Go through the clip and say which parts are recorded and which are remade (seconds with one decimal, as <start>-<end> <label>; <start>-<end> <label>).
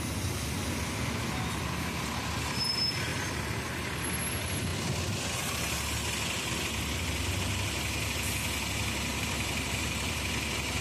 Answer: 0.0-9.1 recorded; 9.1-10.2 remade; 10.2-10.8 recorded